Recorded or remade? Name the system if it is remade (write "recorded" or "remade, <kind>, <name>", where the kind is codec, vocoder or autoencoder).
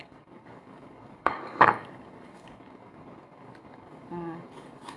remade, codec, DAC